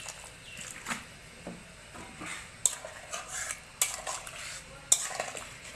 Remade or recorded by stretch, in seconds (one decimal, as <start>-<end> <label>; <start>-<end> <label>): 0.0-5.8 recorded